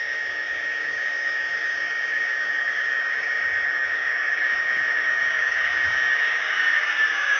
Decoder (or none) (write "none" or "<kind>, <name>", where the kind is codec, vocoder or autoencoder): codec, DAC